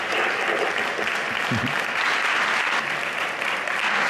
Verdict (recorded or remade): recorded